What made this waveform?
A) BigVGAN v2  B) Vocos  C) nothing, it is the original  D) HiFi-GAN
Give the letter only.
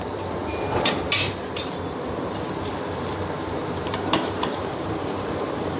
A